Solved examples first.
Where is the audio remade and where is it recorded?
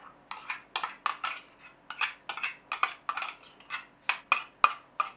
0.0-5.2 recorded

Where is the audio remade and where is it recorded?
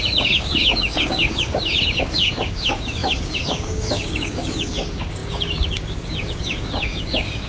0.0-7.5 remade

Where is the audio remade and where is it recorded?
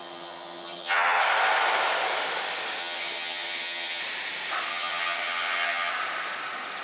0.0-1.2 remade; 1.2-2.8 recorded; 2.8-4.0 remade; 4.0-4.7 recorded; 4.7-5.9 remade; 5.9-6.8 recorded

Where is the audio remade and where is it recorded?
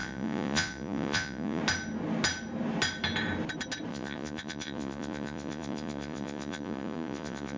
0.0-1.6 remade; 1.6-3.9 recorded; 3.9-7.6 remade